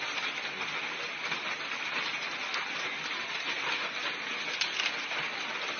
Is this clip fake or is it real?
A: real